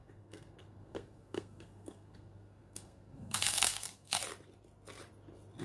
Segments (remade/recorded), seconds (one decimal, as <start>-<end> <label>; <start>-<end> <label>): 0.0-4.2 remade; 4.2-5.6 recorded